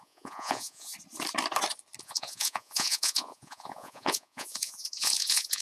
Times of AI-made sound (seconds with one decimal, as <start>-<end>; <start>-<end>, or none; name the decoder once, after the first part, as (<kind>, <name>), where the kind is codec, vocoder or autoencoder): 0.0-0.9 (vocoder, Vocos); 2.0-5.6